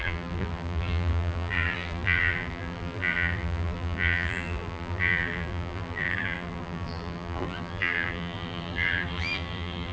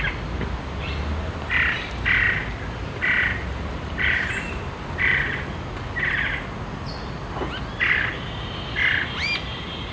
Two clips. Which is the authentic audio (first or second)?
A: second